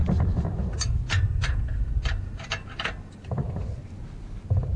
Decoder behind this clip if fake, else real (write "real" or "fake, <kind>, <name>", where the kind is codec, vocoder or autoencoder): real